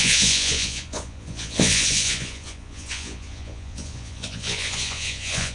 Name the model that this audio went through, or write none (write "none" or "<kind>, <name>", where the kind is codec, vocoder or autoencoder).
vocoder, Vocos